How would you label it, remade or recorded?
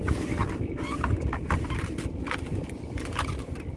recorded